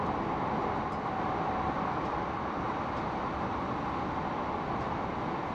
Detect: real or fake real